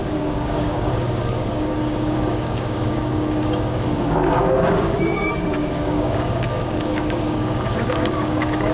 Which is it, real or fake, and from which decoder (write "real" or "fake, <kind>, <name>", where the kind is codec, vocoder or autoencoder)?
fake, codec, DAC